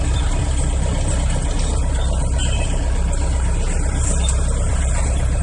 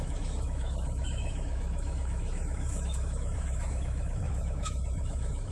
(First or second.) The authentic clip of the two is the first